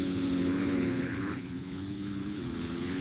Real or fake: fake